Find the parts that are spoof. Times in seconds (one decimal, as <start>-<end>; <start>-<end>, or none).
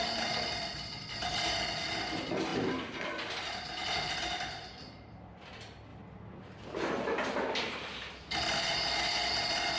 none